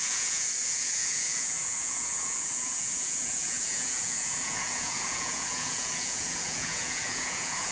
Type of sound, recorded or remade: remade